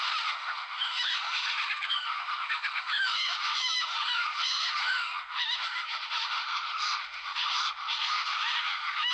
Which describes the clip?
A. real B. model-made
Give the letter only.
B